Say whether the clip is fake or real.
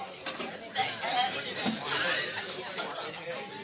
real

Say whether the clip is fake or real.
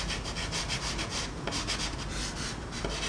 real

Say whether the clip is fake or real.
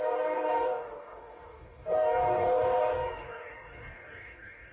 fake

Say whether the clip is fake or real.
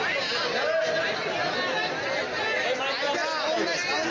real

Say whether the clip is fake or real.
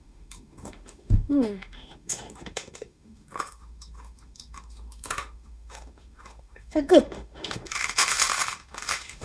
fake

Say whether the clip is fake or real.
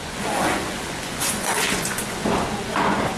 fake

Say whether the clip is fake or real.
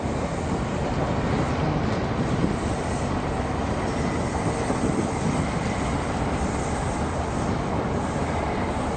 real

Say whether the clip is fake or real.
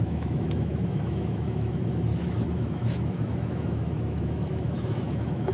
fake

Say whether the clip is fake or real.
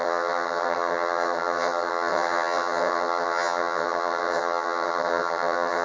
fake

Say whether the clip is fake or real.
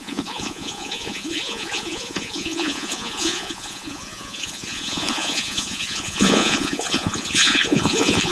fake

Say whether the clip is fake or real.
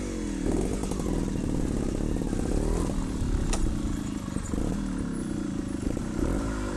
real